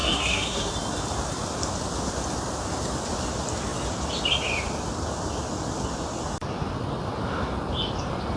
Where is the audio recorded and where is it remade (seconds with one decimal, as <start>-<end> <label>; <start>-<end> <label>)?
0.0-0.7 remade; 0.7-8.4 recorded